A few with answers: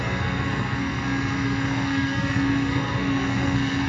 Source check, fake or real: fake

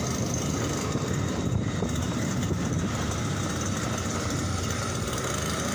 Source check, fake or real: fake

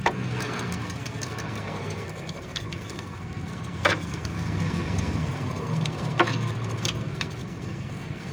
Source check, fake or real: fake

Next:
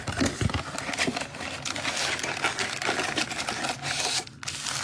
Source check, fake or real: real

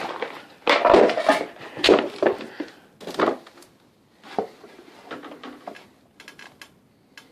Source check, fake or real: real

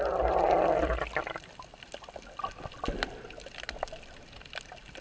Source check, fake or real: real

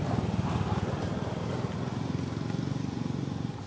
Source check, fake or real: real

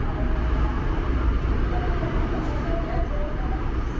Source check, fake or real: real